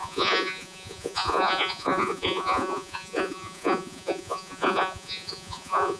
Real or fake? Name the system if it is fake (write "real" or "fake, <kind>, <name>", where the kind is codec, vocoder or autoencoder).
fake, vocoder, Vocos